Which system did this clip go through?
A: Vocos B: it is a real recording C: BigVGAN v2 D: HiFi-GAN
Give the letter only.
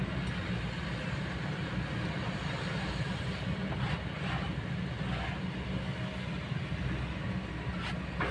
B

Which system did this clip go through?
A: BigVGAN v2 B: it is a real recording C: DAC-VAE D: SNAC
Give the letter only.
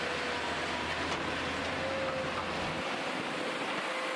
B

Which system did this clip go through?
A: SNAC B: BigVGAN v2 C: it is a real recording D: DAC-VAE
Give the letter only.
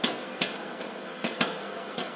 A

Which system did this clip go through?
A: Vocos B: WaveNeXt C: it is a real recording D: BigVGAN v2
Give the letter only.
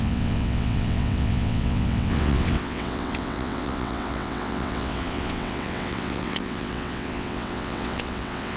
B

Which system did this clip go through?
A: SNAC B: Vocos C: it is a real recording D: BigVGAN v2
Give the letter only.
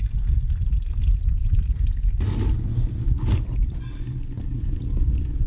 C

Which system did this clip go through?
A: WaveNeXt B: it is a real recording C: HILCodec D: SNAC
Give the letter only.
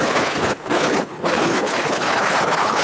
C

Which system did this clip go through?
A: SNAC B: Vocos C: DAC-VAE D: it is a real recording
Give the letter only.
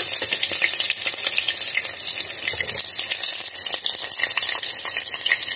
D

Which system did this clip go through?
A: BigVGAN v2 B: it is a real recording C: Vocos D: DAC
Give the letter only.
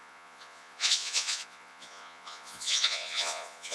C